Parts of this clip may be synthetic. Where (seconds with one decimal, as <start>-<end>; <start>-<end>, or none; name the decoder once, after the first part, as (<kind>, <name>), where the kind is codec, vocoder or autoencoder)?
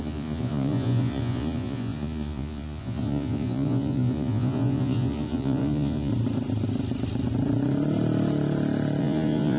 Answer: 0.0-6.1 (vocoder, Vocos); 9.0-9.6